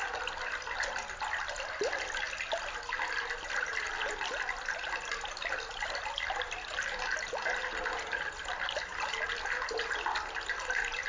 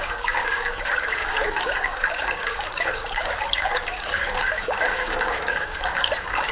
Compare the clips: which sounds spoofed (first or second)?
second